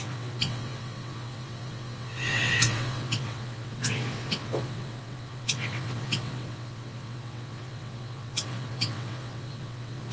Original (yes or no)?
no